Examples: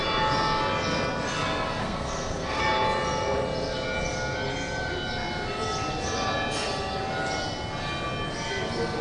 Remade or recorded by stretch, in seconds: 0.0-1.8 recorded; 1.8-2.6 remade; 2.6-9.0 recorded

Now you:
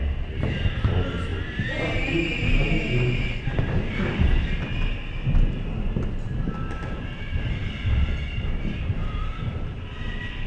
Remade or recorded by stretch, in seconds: 0.0-10.5 recorded

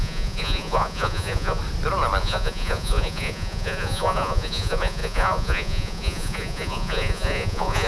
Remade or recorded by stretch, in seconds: 0.0-1.6 remade; 1.6-2.2 recorded; 2.2-7.9 remade

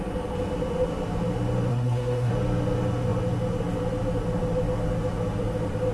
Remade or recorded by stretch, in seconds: 0.0-1.7 recorded; 1.7-2.3 remade; 2.3-5.9 recorded

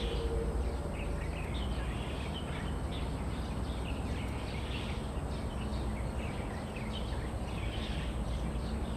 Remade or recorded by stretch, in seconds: 0.0-9.0 recorded

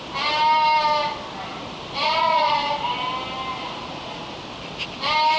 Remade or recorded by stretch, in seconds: 0.0-2.0 recorded; 2.0-2.7 remade; 2.7-3.5 recorded; 3.5-4.2 remade; 4.2-5.4 recorded

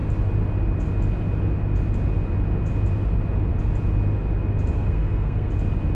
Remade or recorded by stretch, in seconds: 0.0-4.7 recorded; 4.7-5.5 remade; 5.5-5.9 recorded